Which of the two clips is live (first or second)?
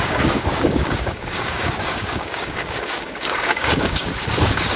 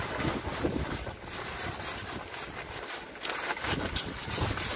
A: second